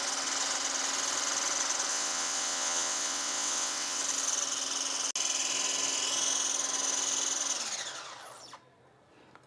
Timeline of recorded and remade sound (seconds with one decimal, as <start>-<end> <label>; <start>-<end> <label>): 0.0-1.9 recorded; 1.9-4.0 remade; 4.0-9.5 recorded